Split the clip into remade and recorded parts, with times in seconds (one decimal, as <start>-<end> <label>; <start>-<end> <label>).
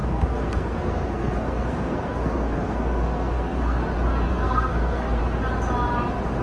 0.0-3.8 remade; 3.8-4.3 recorded; 4.3-5.2 remade; 5.2-6.4 recorded